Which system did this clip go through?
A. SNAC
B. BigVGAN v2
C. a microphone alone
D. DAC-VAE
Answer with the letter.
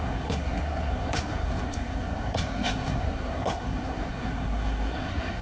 A